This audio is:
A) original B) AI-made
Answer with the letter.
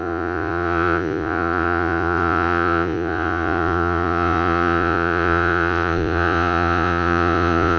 B